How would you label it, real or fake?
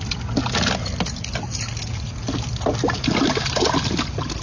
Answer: real